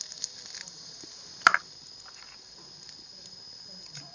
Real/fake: real